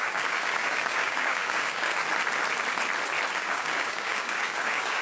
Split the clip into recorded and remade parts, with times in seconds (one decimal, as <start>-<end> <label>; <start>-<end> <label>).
0.0-2.0 remade; 2.0-3.3 recorded; 3.3-5.0 remade